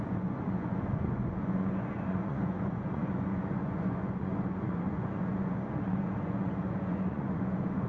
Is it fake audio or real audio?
fake